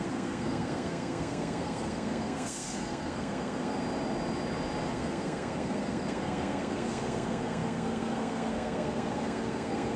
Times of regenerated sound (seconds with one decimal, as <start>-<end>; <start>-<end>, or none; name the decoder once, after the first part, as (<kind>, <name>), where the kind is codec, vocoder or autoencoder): 0.0-3.8 (codec, SNAC); 4.9-10.0